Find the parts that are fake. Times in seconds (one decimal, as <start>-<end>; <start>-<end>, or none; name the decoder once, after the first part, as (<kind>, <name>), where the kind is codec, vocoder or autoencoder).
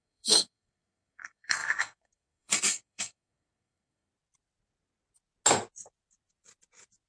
0.0-4.1 (codec, SNAC)